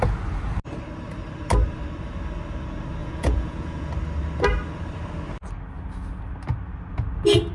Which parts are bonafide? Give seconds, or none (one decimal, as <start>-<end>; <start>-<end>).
0.0-3.0; 3.9-7.5